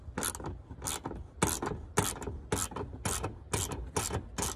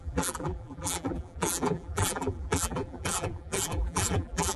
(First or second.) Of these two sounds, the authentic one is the first